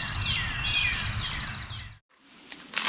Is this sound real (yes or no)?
yes